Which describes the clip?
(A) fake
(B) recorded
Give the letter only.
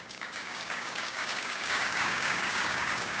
A